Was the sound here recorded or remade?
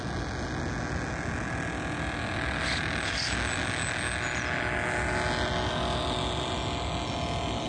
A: recorded